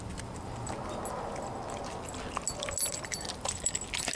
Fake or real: real